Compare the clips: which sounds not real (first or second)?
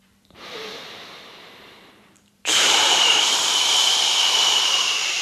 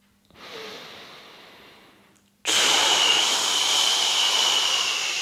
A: first